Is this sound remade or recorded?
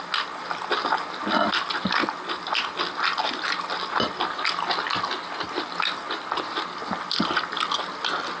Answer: recorded